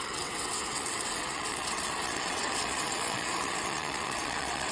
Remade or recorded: remade